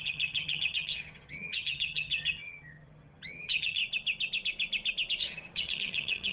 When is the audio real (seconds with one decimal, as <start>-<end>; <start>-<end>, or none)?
3.8-5.2